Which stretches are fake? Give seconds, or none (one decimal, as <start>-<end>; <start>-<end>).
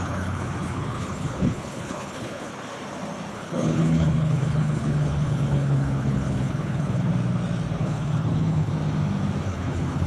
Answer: 0.0-2.5; 3.3-7.1; 7.8-8.7; 9.4-10.1